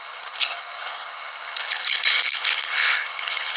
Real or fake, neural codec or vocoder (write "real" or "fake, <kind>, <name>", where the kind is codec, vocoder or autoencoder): fake, codec, HILCodec